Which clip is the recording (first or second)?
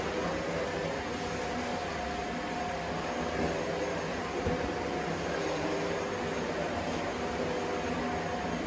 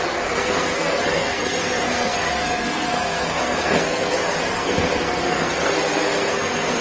first